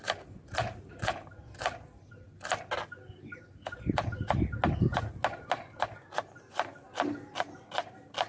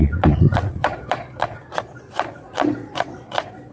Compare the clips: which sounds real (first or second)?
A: first